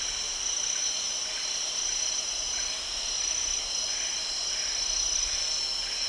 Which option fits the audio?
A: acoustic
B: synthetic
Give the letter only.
A